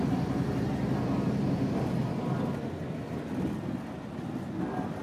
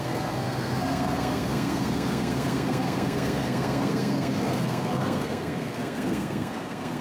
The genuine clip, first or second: first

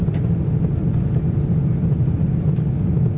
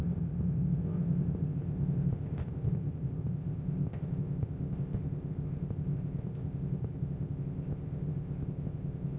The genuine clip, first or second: first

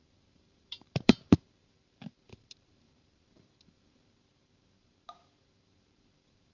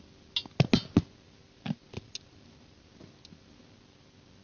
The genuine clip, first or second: second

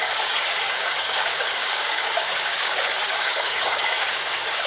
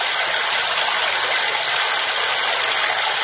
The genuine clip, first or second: second